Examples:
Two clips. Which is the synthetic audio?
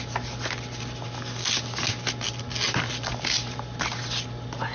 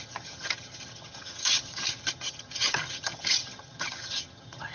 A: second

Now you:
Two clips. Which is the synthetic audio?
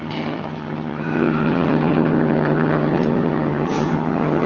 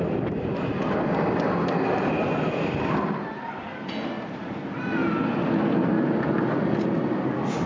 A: first